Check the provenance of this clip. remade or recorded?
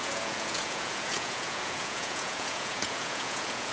remade